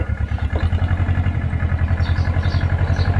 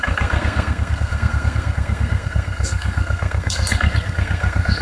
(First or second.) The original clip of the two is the first